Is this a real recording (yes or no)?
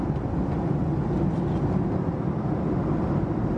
yes